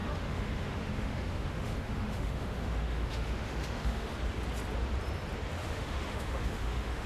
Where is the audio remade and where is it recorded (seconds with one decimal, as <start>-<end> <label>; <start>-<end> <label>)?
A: 0.0-4.1 remade; 4.1-5.6 recorded; 5.6-7.1 remade